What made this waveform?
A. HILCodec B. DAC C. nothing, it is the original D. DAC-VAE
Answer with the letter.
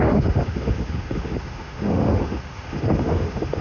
D